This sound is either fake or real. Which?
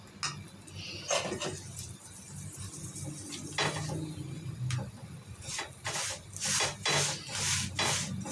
real